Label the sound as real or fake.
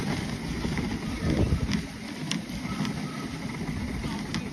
real